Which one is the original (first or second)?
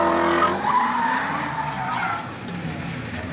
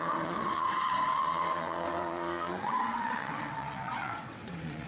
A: first